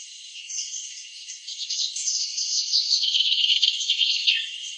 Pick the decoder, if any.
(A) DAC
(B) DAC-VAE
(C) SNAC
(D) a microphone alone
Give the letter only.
C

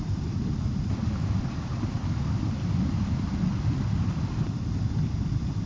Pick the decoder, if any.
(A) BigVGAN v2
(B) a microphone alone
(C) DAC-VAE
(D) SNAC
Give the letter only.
A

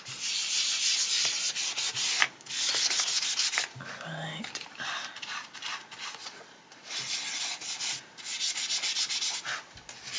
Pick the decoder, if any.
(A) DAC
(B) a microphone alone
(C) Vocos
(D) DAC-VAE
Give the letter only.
B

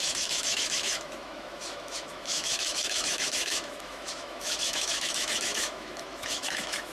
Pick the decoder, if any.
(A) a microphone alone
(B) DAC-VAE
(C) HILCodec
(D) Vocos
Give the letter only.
B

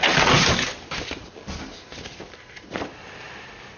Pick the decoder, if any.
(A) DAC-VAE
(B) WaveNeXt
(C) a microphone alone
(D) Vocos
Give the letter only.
C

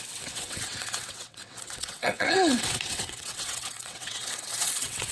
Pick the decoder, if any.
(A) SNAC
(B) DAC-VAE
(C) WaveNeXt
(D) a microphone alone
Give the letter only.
C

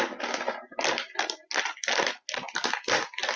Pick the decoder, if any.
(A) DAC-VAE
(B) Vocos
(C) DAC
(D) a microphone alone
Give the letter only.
D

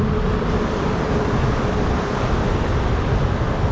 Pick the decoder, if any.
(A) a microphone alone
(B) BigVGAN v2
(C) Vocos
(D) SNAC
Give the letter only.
A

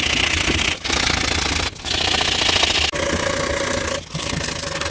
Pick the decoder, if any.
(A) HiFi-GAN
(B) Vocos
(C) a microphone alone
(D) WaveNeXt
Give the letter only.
C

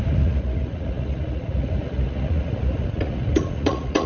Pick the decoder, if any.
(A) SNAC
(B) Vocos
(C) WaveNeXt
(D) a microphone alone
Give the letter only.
B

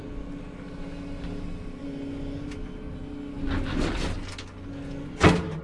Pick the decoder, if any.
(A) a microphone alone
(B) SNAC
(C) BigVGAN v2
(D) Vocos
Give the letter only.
A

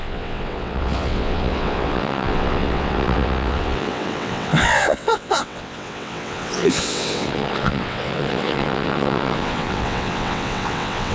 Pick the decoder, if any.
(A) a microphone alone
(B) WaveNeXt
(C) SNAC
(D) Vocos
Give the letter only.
B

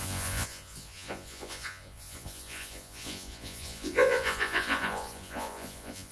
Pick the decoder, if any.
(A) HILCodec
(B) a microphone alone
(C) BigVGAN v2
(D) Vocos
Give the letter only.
D